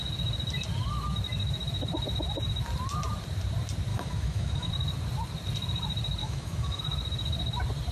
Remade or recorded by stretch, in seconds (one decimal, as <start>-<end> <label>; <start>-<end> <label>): 0.0-3.9 recorded; 3.9-4.7 remade; 4.7-6.2 recorded; 6.2-6.8 remade; 6.8-7.9 recorded